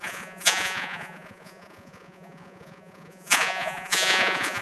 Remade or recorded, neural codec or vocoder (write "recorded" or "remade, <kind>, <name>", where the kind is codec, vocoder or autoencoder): remade, vocoder, Vocos